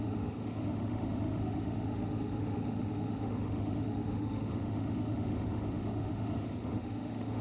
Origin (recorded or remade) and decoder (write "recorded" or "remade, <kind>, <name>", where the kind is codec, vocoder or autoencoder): remade, autoencoder, DAC-VAE